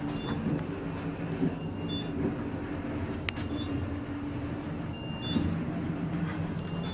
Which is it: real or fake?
real